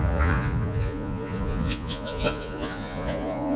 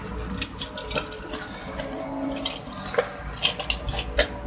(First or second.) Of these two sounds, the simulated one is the first